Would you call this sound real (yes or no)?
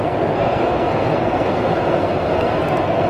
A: no